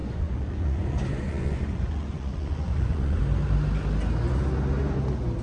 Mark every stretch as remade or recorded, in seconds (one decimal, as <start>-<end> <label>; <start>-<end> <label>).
0.0-3.2 remade; 3.2-5.4 recorded